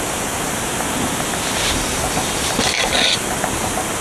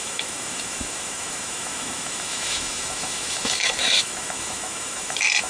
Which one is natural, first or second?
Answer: first